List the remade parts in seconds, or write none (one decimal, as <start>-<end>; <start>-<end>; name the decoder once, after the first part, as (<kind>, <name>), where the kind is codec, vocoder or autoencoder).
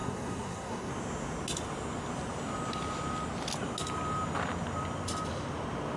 0.0-0.9 (codec, SNAC)